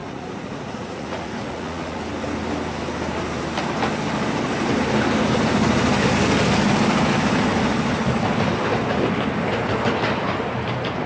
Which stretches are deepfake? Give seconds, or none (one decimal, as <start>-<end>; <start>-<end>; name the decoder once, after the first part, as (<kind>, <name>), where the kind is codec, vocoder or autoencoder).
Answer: 0.0-2.0 (vocoder, Vocos)